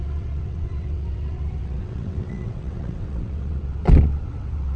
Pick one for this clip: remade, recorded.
remade